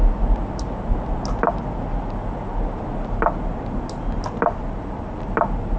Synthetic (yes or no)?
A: no